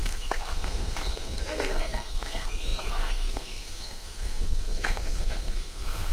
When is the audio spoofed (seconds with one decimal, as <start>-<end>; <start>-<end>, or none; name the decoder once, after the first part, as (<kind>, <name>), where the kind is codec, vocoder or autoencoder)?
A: 0.0-6.1 (codec, SNAC)